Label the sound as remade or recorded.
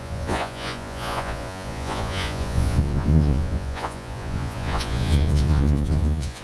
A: remade